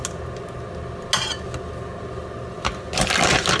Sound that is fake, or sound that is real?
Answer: real